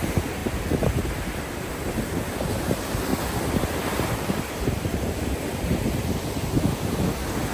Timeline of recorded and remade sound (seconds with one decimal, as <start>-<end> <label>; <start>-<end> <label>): 0.0-0.4 recorded; 0.4-1.7 remade; 1.7-3.1 recorded; 3.1-6.4 remade; 6.4-7.5 recorded